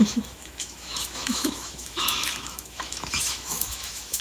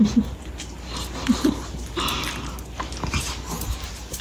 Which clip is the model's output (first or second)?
first